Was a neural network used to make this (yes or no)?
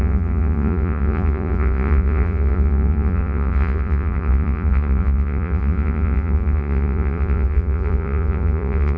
yes